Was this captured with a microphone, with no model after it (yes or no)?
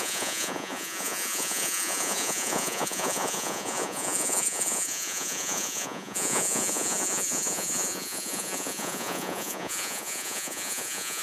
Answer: no